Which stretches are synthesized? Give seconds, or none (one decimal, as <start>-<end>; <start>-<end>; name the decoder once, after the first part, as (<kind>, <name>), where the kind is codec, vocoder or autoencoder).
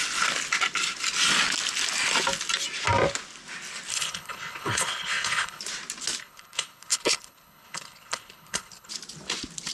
3.9-5.6 (codec, HILCodec); 6.2-8.9